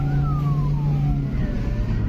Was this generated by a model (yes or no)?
no